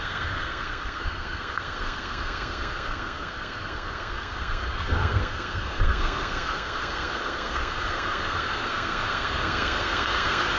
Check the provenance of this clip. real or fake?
fake